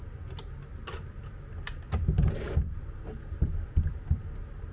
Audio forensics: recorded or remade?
recorded